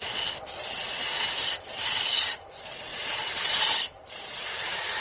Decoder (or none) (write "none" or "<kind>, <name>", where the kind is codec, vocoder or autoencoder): none